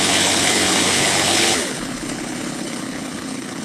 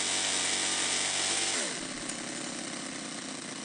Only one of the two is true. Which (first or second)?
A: second